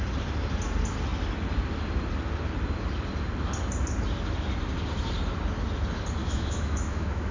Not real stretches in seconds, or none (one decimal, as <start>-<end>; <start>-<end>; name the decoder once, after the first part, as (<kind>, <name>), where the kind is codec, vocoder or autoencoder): 6.2-7.3 (autoencoder, DAC-VAE)